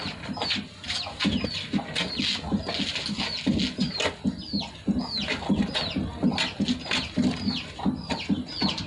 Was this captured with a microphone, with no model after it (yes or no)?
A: yes